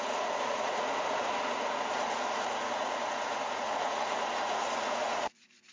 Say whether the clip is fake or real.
fake